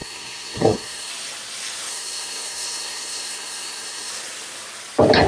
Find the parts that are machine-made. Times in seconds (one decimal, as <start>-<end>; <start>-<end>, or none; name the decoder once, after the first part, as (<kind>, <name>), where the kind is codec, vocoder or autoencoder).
0.0-1.1 (codec, SNAC); 1.9-4.1